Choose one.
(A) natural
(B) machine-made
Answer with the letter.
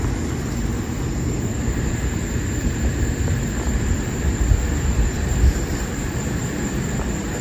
B